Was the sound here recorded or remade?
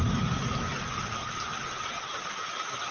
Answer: recorded